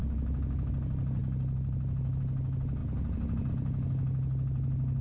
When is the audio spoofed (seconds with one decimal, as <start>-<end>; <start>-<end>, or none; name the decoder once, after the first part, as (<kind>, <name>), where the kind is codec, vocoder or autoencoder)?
none

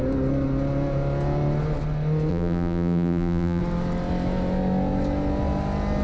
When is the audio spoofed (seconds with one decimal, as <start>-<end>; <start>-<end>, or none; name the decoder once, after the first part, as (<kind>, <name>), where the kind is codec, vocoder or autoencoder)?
2.3-3.6 (vocoder, BigVGAN v2)

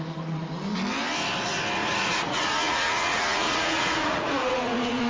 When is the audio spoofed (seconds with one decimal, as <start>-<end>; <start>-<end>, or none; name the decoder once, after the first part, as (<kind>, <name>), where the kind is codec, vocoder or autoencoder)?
1.8-5.1 (vocoder, Vocos)

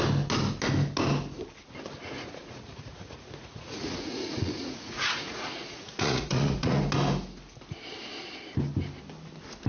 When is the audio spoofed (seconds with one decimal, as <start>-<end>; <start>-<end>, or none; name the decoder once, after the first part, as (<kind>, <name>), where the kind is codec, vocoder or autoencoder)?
2.0-6.8 (vocoder, Vocos)